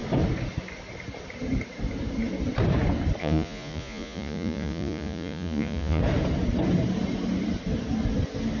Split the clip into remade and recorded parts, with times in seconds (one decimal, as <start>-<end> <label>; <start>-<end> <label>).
0.0-3.2 recorded; 3.2-6.0 remade; 6.0-8.6 recorded